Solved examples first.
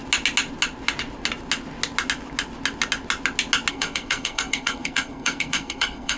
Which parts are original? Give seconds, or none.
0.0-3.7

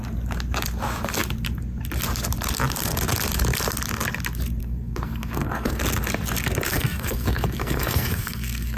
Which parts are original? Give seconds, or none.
0.0-4.6; 5.8-6.7